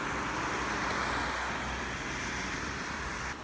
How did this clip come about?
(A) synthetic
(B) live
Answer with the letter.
B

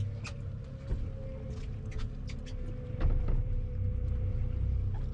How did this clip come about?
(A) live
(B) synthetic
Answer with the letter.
A